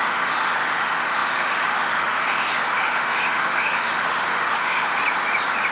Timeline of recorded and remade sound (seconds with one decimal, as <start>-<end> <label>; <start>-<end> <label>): 0.0-5.0 remade; 5.0-5.7 recorded